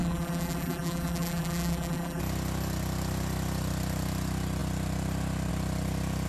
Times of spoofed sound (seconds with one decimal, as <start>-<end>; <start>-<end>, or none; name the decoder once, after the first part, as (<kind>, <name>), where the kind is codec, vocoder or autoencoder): 0.0-2.2 (vocoder, BigVGAN v2)